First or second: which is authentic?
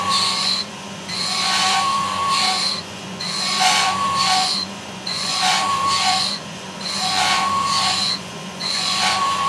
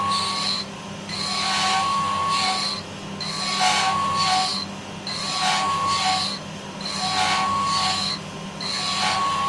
second